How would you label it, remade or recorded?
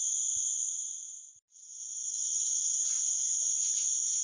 recorded